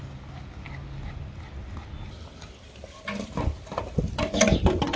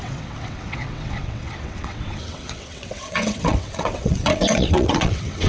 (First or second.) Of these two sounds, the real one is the first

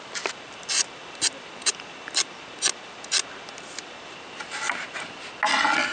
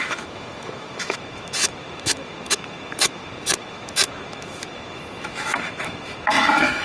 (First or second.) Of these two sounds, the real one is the first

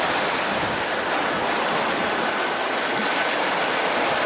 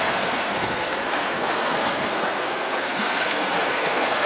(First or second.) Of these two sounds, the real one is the first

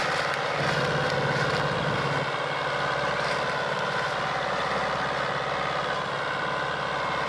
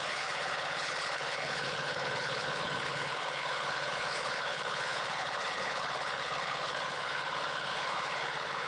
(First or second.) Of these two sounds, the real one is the first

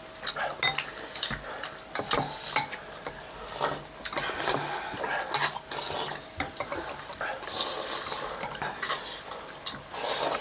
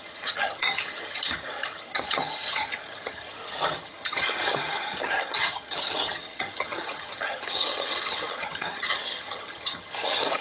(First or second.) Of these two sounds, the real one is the first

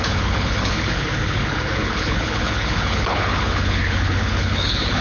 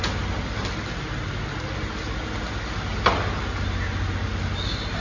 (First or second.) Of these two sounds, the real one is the second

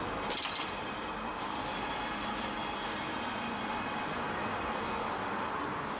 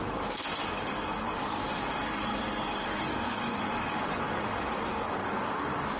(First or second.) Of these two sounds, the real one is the first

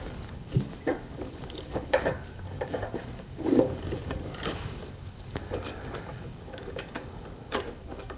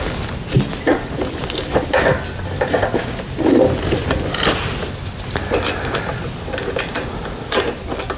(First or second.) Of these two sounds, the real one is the second